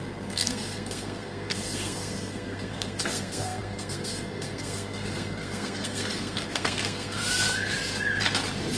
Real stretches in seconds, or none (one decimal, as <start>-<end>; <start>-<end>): 7.2-8.8